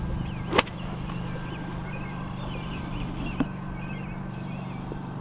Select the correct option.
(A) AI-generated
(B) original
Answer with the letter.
B